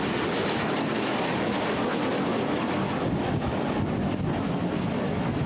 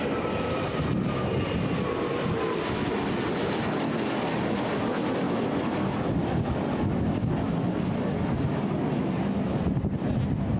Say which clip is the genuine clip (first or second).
second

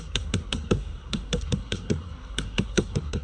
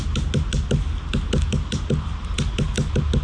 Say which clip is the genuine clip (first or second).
second